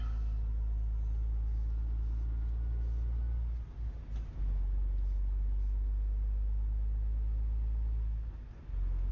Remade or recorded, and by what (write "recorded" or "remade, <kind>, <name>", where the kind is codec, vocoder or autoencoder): recorded